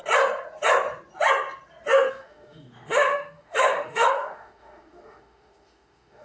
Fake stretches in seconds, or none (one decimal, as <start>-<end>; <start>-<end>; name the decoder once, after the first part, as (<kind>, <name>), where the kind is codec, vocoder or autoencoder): 2.1-6.2 (autoencoder, DAC-VAE)